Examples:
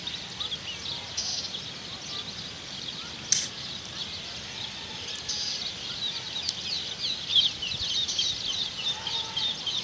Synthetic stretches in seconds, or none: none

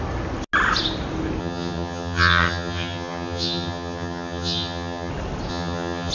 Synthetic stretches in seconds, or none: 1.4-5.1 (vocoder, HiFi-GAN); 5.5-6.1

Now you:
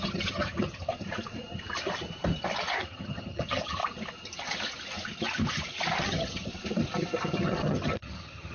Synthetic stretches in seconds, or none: 0.0-0.9 (vocoder, HiFi-GAN); 2.8-3.8; 6.0-6.5; 7.4-8.5